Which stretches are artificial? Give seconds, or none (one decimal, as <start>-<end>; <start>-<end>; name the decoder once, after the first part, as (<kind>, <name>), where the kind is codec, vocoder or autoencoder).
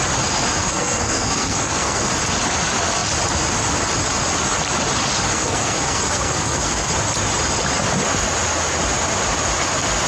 0.6-2.1 (codec, SNAC); 5.3-6.9